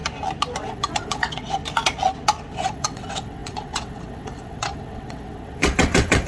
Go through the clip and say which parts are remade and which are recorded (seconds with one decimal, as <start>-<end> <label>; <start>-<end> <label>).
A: 0.0-0.6 recorded; 0.6-1.6 remade; 1.6-2.5 recorded; 2.5-6.3 remade